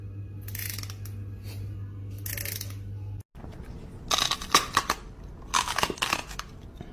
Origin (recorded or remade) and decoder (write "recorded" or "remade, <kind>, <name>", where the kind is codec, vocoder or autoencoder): recorded